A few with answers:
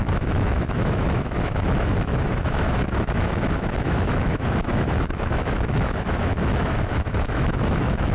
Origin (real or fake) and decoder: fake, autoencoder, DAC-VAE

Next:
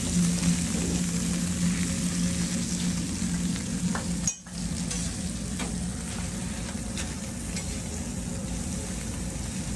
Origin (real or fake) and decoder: real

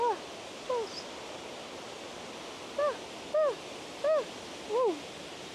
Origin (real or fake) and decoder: real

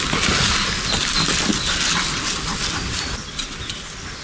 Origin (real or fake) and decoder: real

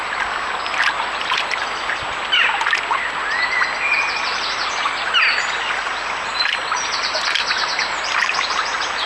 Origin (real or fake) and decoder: real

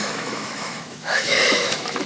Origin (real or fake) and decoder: fake, autoencoder, DAC-VAE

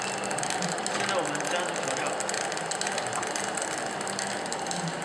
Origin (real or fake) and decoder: real